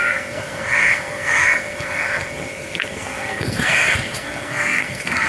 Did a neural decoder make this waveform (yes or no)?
yes